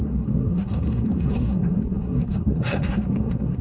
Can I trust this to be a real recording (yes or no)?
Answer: no